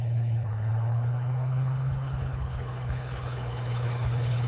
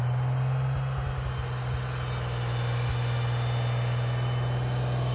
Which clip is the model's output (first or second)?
first